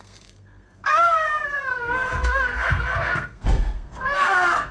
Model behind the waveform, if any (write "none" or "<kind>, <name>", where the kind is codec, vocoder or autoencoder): codec, SNAC